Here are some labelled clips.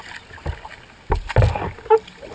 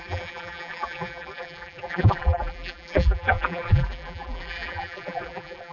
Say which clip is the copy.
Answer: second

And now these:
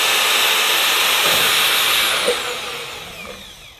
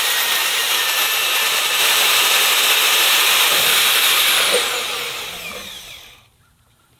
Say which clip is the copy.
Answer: second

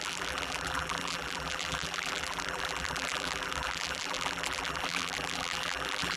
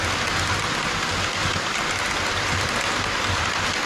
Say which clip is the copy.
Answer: first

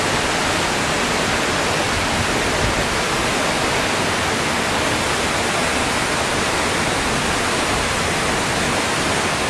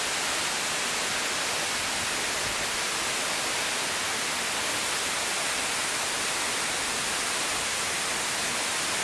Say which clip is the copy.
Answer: second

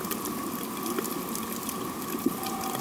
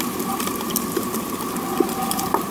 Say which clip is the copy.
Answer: second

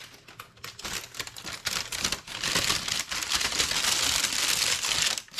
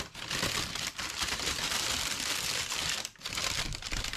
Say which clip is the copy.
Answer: second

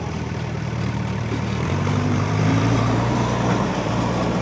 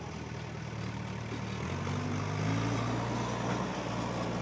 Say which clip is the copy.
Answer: first